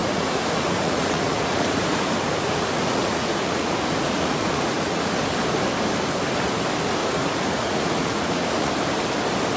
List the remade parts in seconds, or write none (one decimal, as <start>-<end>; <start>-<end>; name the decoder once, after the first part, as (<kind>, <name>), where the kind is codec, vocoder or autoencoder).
0.0-5.1 (vocoder, Vocos); 7.0-8.7